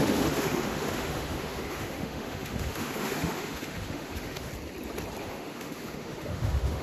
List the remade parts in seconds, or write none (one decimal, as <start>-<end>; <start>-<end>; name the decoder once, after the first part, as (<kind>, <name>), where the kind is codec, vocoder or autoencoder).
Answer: 0.0-4.5 (autoencoder, DAC-VAE); 5.2-6.8